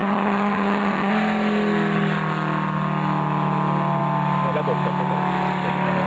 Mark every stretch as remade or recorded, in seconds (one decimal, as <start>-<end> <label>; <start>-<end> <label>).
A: 0.0-1.1 remade; 1.1-6.1 recorded